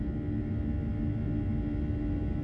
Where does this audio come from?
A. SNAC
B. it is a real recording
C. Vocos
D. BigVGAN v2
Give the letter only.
B